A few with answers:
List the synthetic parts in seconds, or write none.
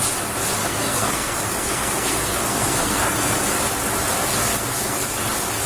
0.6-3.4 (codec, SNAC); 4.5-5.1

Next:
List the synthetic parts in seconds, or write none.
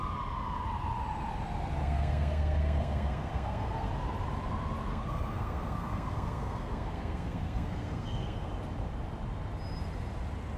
1.8-3.9 (codec, SNAC); 4.8-8.5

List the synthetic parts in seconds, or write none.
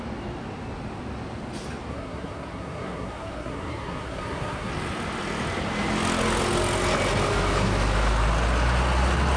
1.9-4.7 (codec, SNAC)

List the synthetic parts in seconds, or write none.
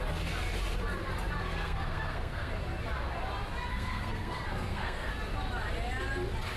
1.4-2.5 (codec, SNAC); 3.7-5.1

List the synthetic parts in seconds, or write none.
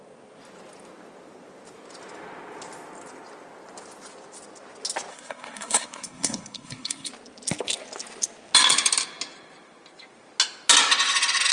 5.1-7.1 (codec, SNAC)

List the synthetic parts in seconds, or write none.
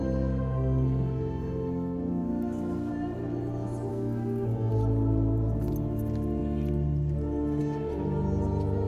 0.0-2.9 (codec, SNAC); 3.9-4.7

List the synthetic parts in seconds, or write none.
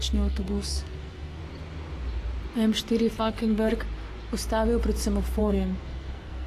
0.0-1.4 (codec, SNAC); 3.2-3.7; 5.4-6.5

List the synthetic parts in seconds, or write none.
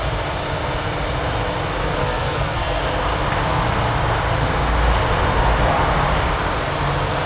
2.0-2.8 (codec, SNAC)